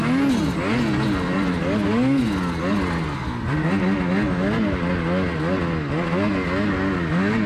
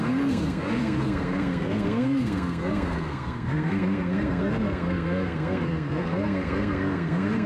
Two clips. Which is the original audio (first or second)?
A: first